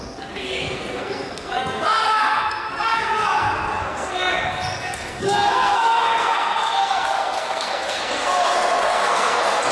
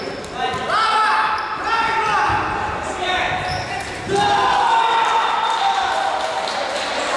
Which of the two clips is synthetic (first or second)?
first